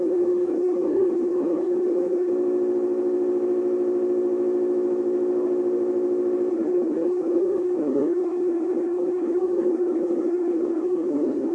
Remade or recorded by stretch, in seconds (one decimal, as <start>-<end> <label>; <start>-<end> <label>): 0.0-2.3 remade; 2.3-6.5 recorded; 6.5-11.5 remade